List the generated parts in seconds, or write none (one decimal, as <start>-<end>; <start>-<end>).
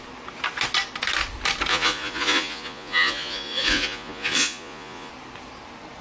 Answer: 1.7-5.1